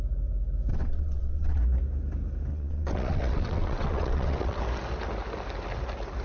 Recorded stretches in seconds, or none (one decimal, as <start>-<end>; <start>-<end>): 0.0-0.7; 1.6-2.5; 4.6-6.2